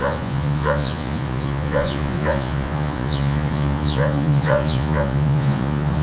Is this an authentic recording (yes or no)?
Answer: no